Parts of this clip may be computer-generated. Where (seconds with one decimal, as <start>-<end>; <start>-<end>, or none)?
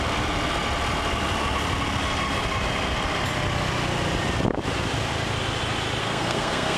6.0-6.8